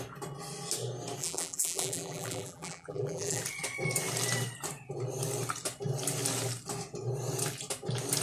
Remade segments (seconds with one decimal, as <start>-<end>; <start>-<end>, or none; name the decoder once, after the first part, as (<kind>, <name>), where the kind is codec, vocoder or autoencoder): 1.2-3.4 (vocoder, BigVGAN v2)